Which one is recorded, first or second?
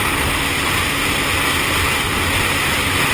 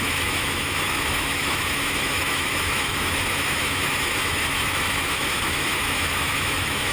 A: first